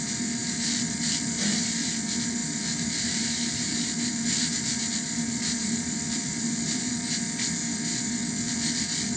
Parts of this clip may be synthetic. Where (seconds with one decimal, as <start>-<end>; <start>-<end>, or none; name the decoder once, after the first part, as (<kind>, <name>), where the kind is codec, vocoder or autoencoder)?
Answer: 0.4-2.0 (vocoder, BigVGAN v2); 2.4-7.1